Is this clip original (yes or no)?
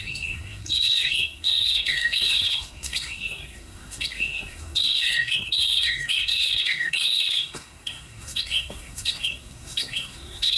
no